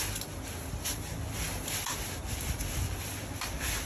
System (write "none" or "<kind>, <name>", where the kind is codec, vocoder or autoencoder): none